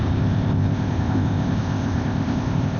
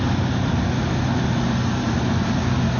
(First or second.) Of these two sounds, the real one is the second